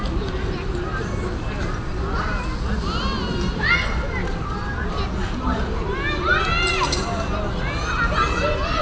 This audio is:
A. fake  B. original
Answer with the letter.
B